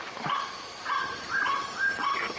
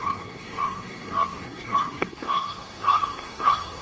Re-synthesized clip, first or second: second